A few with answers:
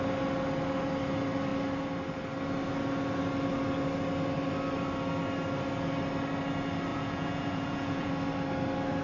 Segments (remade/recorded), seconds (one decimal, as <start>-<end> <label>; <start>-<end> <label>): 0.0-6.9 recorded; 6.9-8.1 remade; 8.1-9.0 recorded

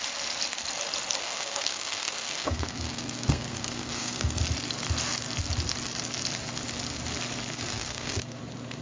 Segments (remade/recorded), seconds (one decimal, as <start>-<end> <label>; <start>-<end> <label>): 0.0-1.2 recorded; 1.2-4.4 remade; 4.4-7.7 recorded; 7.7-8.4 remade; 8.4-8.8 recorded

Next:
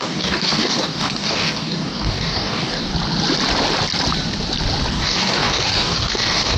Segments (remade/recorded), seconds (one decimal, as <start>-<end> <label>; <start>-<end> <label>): 0.0-2.9 remade; 2.9-4.9 recorded; 4.9-6.6 remade